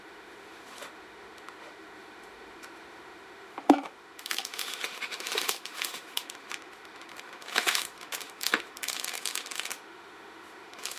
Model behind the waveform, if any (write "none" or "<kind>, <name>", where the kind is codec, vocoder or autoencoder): autoencoder, DAC-VAE